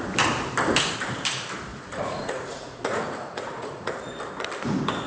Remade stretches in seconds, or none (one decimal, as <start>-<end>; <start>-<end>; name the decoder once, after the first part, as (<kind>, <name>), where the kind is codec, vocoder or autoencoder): 1.7-3.9 (vocoder, Vocos)